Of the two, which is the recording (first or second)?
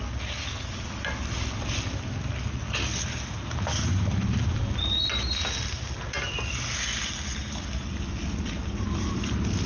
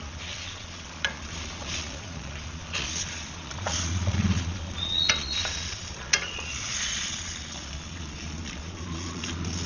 first